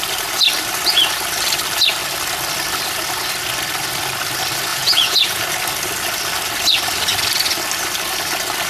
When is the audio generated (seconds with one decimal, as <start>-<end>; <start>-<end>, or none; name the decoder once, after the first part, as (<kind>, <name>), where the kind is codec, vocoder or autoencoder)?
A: 4.7-5.4 (vocoder, Vocos)